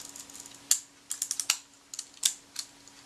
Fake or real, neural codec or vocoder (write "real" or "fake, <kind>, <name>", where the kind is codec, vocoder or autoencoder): real